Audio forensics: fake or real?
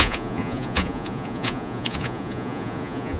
fake